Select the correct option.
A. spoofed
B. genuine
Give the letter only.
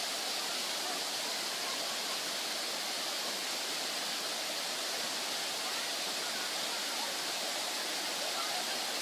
B